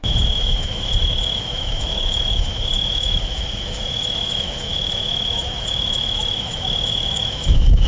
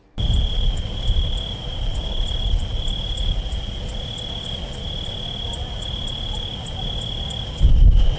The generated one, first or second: first